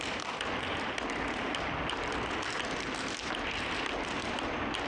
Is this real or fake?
real